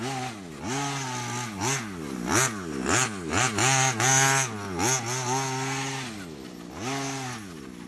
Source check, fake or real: real